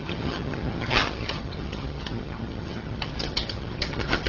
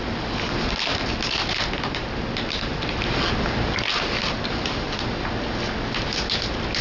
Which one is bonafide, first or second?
second